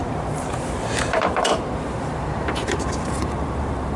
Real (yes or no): no